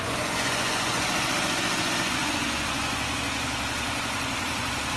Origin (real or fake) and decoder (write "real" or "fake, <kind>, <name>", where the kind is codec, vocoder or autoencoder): fake, vocoder, Vocos